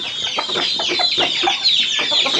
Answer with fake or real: real